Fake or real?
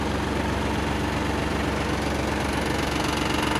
real